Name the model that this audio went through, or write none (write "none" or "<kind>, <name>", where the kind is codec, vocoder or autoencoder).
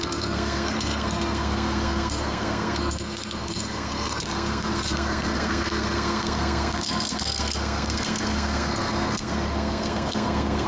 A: codec, SNAC